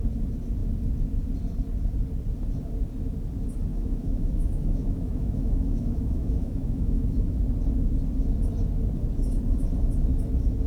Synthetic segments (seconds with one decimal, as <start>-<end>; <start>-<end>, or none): 3.7-7.4